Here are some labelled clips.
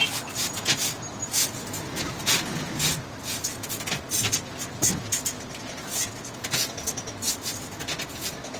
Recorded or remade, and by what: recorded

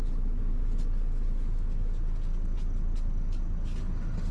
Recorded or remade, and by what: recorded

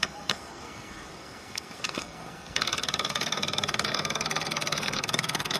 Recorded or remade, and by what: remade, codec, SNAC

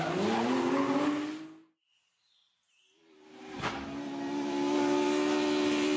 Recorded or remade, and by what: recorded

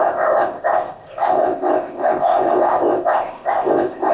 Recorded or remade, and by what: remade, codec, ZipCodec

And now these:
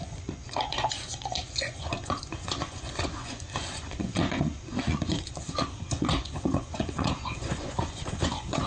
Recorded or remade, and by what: remade, vocoder, Vocos